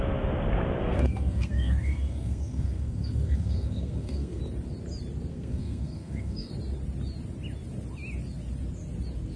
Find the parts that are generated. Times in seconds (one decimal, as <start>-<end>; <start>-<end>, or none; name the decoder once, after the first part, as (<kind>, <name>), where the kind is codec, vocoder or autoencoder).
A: 0.8-4.4 (codec, SNAC); 5.3-6.5

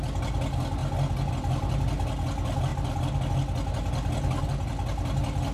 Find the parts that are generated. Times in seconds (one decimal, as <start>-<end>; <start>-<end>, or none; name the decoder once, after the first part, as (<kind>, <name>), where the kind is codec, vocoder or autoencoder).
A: none

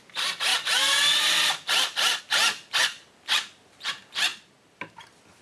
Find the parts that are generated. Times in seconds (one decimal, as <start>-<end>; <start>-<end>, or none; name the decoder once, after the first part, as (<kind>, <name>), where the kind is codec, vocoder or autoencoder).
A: none

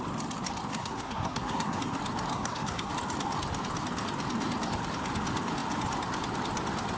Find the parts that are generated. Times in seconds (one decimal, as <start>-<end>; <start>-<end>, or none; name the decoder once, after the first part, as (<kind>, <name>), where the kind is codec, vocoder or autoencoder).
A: 0.7-1.8 (codec, SNAC); 2.3-2.9

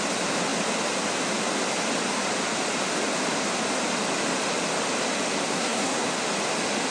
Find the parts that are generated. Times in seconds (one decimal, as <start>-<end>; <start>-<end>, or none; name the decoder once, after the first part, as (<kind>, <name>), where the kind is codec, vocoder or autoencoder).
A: 5.5-6.1 (codec, SNAC)

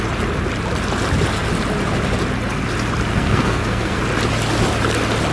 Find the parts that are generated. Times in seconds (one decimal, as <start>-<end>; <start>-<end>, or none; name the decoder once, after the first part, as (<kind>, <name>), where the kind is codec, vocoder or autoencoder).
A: 3.1-4.0 (codec, SNAC)

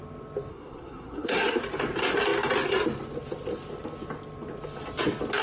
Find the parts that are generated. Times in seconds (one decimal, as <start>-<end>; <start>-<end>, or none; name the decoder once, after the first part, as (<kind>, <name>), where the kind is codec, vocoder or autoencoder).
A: 0.5-1.6 (codec, SNAC)

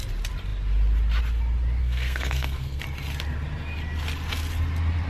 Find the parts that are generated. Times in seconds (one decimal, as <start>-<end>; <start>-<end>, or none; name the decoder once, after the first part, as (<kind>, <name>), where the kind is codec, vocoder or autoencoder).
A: 1.8-2.8 (codec, SNAC)